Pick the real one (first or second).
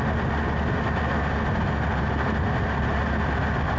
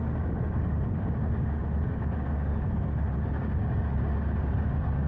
first